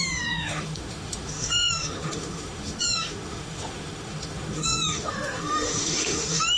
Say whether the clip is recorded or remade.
remade